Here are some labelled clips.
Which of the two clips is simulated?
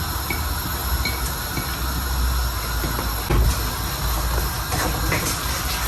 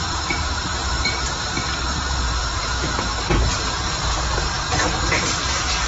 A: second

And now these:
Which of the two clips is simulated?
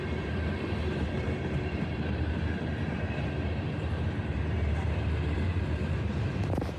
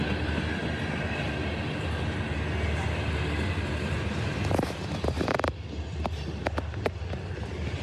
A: first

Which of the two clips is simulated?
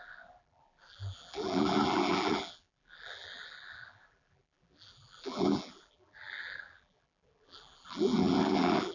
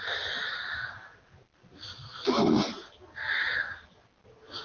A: first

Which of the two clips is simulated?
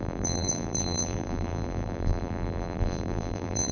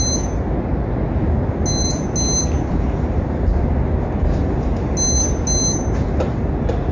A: first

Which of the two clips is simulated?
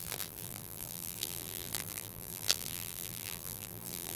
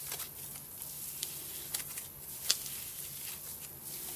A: first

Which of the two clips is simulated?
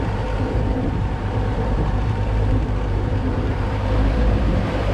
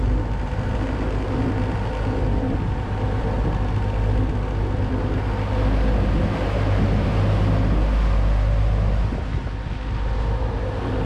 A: first